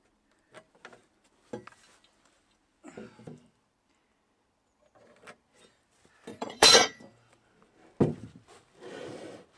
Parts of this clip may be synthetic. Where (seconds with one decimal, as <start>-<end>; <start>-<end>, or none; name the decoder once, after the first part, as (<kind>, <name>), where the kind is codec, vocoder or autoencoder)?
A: 6.3-7.0 (vocoder, Vocos)